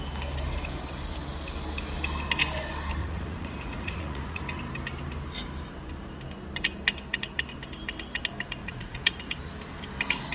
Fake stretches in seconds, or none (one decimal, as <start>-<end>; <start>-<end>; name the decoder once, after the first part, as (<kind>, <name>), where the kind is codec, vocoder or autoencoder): 3.0-4.4 (vocoder, Vocos); 8.6-9.2